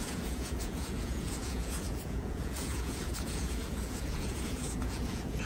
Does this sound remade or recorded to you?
remade